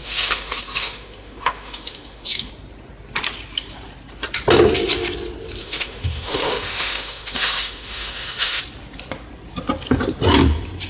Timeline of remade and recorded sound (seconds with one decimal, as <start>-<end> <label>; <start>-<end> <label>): 0.0-2.5 remade; 2.5-5.6 recorded; 5.6-8.6 remade; 8.6-10.9 recorded